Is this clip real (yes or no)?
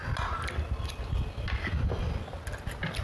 yes